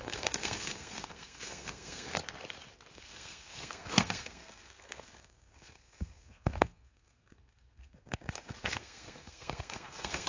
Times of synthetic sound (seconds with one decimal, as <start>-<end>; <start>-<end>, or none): 0.0-2.2; 2.9-10.3